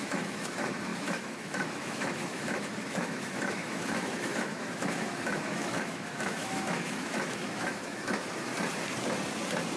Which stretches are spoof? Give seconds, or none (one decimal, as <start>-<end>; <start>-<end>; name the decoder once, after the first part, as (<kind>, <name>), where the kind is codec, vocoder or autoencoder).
0.0-8.5 (autoencoder, DAC-VAE)

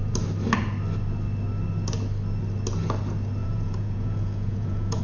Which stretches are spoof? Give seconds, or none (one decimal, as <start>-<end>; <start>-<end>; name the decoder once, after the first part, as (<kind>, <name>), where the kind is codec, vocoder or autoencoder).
3.4-5.0 (vocoder, Vocos)

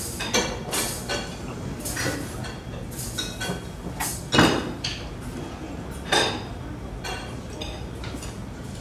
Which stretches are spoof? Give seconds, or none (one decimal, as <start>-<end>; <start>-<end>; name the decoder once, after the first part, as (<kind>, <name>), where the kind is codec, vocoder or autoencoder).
none

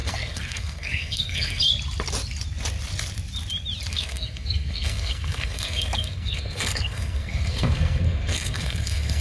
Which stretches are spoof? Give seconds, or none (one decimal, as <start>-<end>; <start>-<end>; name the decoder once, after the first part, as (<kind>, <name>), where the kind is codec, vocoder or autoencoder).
0.0-1.6 (codec, SNAC); 3.9-9.2

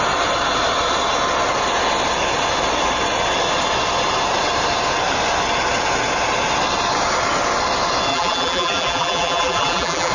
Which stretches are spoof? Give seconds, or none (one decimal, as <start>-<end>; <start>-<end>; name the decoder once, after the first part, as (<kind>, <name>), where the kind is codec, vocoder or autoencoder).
8.1-10.1 (vocoder, BigVGAN v2)

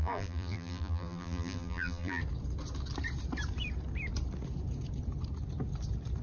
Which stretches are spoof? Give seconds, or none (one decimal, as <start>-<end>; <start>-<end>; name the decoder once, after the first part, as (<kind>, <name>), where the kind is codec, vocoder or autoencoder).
0.0-2.2 (vocoder, BigVGAN v2)